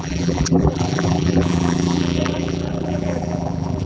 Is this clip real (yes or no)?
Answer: no